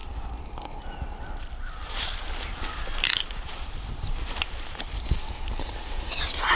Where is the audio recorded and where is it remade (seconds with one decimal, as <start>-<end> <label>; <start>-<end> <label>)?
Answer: 0.0-1.8 recorded; 1.8-5.8 remade; 5.8-6.6 recorded